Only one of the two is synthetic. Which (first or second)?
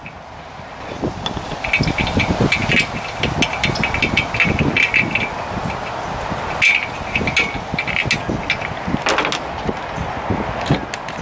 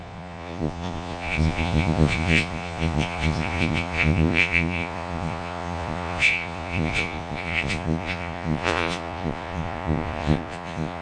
second